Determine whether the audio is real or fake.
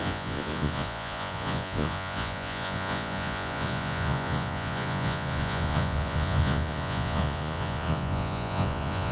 fake